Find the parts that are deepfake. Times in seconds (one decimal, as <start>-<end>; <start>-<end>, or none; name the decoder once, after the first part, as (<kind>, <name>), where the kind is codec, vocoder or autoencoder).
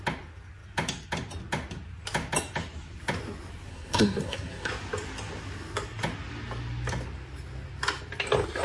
3.7-4.7 (codec, SNAC)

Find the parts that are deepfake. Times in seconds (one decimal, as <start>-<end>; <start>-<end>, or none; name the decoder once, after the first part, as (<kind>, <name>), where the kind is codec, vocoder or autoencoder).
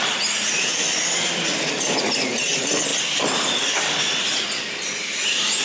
none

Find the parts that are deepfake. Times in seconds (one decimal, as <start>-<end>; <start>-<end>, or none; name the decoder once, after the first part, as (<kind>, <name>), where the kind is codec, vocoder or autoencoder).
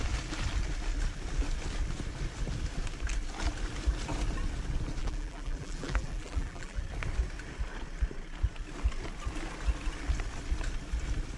5.0-6.8 (vocoder, BigVGAN v2)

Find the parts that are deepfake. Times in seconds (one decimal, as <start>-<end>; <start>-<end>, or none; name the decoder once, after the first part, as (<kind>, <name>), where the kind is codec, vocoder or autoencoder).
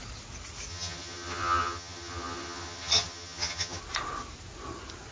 0.7-3.8 (vocoder, HiFi-GAN)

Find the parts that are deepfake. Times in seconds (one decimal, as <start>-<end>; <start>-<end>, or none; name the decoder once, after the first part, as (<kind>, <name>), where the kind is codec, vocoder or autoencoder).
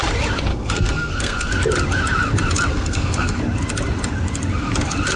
0.5-1.5 (codec, SNAC); 2.7-3.4